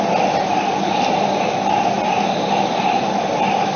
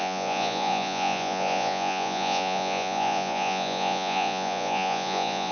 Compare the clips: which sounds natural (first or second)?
first